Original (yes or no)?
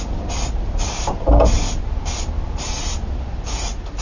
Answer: yes